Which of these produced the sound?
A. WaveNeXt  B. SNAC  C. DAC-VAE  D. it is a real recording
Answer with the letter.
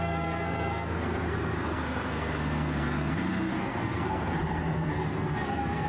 B